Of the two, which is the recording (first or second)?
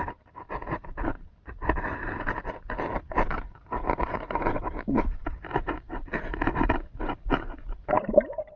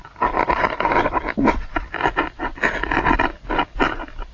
second